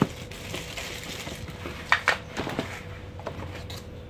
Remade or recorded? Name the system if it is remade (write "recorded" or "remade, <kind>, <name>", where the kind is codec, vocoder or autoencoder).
recorded